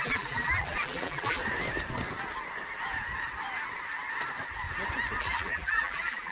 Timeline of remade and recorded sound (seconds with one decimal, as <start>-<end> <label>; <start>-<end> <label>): 0.0-1.4 remade; 1.4-5.2 recorded; 5.2-6.3 remade